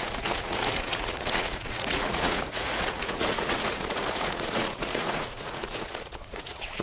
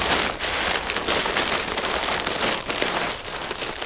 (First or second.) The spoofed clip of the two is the first